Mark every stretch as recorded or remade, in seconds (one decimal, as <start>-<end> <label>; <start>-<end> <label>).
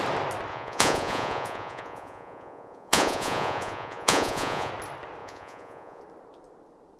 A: 0.0-0.5 recorded; 0.5-4.7 remade; 4.7-5.2 recorded; 5.2-6.0 remade; 6.0-7.0 recorded